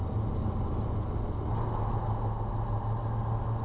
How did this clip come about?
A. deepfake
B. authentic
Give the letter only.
B